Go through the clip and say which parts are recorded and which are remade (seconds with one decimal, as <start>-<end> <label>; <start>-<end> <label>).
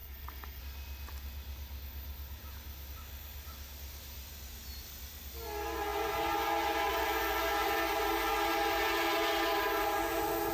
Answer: 0.0-0.6 remade; 0.6-10.5 recorded